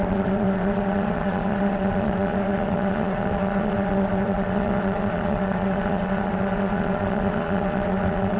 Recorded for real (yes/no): no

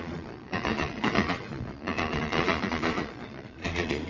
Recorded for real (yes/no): no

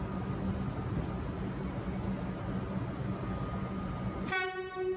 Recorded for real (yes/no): yes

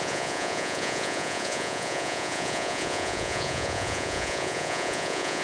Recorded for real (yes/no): no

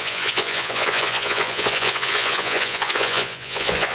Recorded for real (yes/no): no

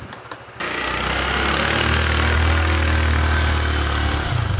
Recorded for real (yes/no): yes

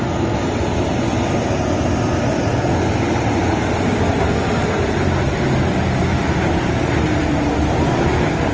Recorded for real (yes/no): yes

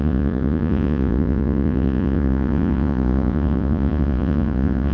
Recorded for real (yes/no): no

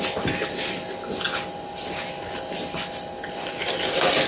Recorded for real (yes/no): yes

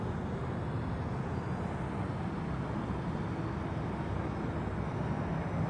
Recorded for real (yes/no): yes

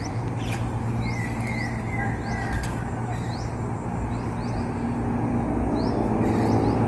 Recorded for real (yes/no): yes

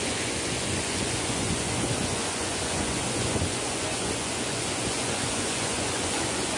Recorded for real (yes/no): no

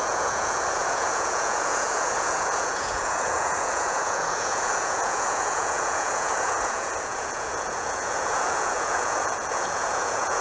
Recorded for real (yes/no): no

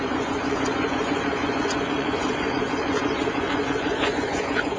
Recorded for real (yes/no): no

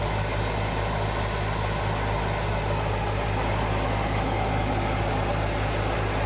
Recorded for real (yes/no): yes